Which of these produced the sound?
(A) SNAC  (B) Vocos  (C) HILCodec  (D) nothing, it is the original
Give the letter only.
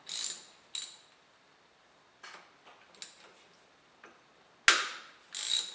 D